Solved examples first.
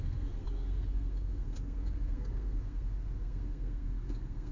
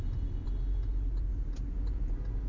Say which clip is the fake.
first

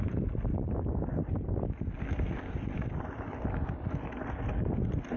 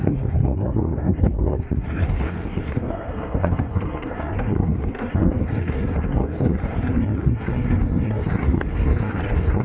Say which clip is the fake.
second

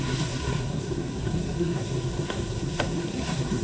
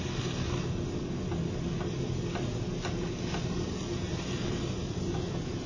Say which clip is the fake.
first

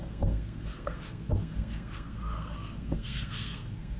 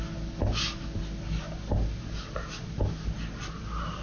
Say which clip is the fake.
first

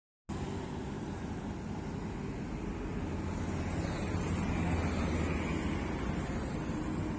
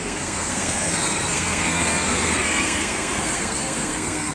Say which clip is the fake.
second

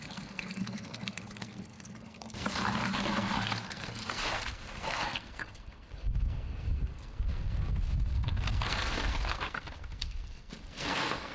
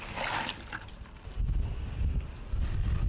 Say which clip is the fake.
first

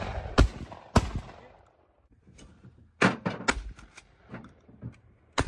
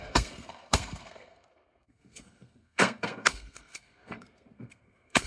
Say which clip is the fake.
second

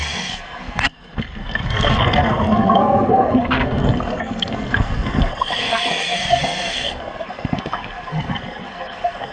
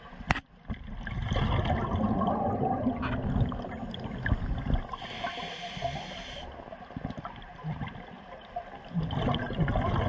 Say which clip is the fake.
first